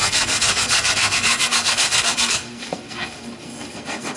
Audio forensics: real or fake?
fake